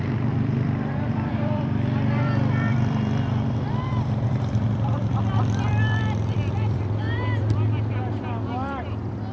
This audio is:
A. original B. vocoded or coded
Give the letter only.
B